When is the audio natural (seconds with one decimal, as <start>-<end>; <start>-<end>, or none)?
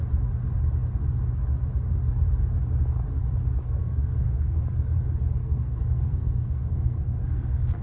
0.0-3.6; 4.6-5.4